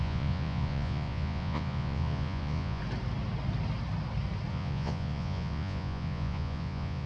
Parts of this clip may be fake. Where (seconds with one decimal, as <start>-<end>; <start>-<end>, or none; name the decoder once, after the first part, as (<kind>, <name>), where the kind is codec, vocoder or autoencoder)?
0.0-2.8 (vocoder, Vocos); 4.5-7.1